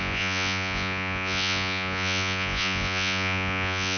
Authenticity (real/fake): fake